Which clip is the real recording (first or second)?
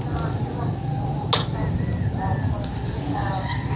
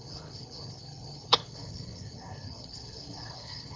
first